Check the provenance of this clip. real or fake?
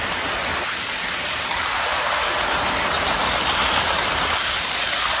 real